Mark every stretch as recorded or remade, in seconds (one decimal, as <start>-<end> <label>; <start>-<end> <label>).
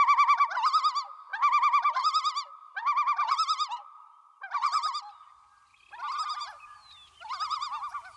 0.0-1.3 recorded; 1.3-5.0 remade; 5.0-8.2 recorded